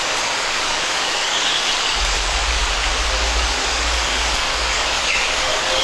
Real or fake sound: fake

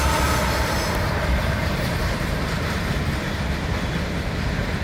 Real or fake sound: fake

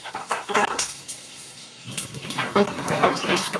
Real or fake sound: fake